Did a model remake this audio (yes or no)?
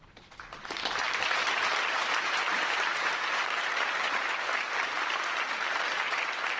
yes